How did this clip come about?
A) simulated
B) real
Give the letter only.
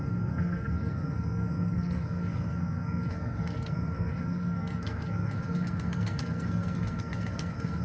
A